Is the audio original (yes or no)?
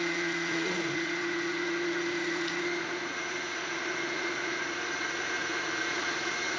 no